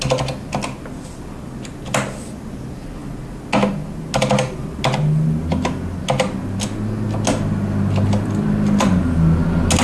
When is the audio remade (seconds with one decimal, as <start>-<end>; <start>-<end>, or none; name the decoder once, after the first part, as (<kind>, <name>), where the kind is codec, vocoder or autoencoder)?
none